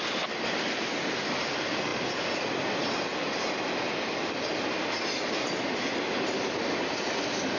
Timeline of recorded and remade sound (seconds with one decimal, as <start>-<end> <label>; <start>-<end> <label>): 0.0-7.6 recorded